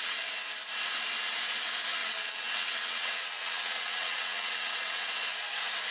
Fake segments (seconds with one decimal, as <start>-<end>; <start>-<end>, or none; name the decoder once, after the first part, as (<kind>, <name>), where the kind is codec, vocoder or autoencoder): 2.0-5.1 (vocoder, WaveNeXt)